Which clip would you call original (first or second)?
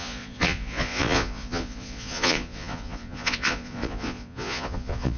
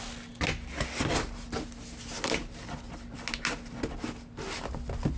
second